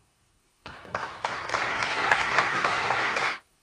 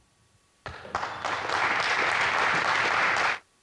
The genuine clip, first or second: second